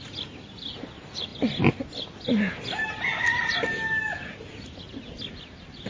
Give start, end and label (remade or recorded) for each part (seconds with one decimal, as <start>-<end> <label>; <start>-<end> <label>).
0.0-5.9 recorded